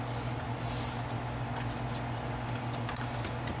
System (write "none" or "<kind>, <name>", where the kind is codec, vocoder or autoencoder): none